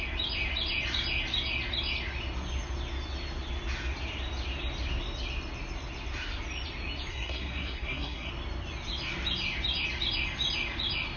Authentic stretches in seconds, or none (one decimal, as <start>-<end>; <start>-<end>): 0.0-7.1; 8.3-11.2